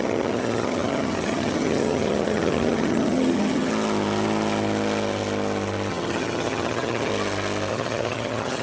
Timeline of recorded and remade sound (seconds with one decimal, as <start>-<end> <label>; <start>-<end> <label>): 0.0-3.7 remade; 3.7-5.9 recorded; 5.9-7.1 remade; 7.1-7.7 recorded; 7.7-8.6 remade